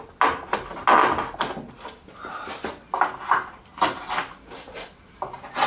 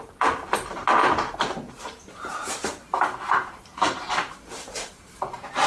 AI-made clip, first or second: second